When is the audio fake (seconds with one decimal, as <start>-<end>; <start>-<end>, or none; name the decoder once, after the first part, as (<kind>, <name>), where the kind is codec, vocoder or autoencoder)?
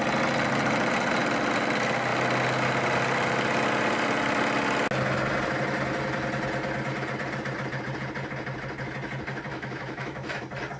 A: 9.5-10.4 (autoencoder, DAC-VAE)